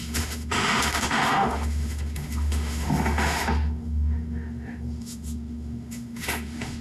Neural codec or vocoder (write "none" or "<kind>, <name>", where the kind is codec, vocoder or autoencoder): autoencoder, DAC-VAE